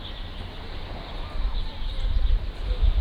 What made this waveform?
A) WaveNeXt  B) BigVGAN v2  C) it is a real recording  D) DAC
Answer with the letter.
C